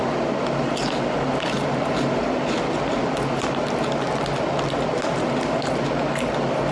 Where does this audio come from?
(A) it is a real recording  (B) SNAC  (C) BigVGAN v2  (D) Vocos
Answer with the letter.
A